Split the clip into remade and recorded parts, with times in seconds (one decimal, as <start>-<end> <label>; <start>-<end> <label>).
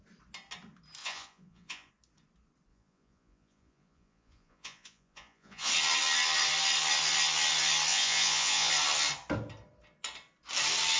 0.0-1.0 recorded; 1.0-1.9 remade; 1.9-2.7 recorded; 2.7-5.7 remade; 5.7-7.9 recorded; 7.9-8.7 remade; 8.7-11.0 recorded